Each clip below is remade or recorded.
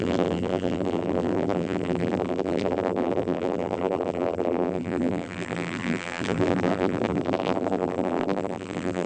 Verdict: remade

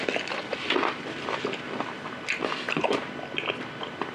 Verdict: recorded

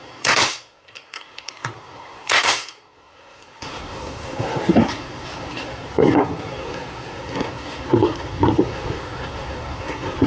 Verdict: remade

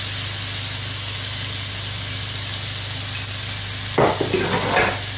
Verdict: recorded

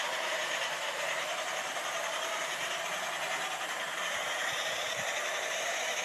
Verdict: remade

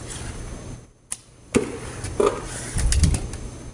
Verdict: recorded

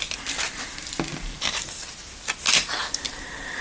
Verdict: recorded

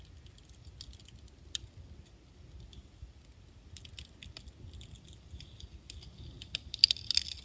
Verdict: recorded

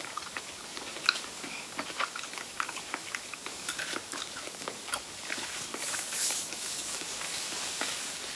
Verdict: remade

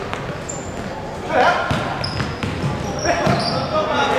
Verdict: recorded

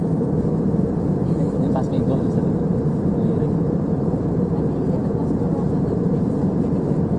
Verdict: remade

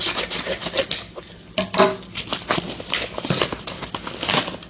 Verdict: recorded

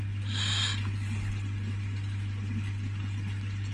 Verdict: recorded